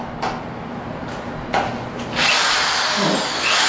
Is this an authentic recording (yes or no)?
yes